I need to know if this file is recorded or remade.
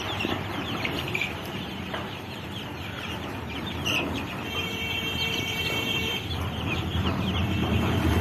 remade